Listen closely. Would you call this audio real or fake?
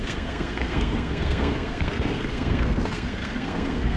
fake